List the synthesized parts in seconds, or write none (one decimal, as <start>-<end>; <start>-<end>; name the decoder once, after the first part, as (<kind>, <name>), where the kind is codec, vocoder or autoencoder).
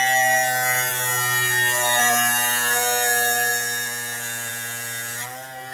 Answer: none